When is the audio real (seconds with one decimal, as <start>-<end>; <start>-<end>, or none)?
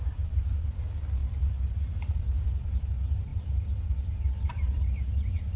0.0-5.6